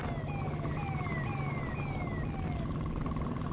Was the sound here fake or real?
real